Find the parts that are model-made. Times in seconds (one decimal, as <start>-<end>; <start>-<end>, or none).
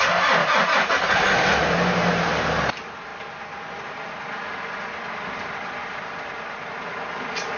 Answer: none